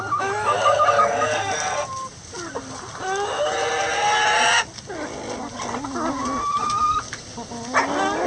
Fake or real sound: real